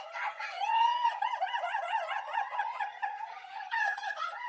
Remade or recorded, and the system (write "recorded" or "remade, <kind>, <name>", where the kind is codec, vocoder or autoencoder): remade, vocoder, HiFi-GAN